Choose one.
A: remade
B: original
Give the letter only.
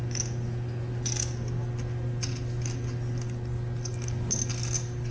B